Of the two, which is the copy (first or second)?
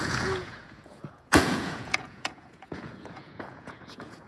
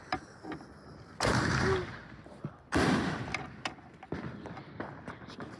first